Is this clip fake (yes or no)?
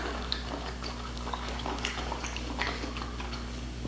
yes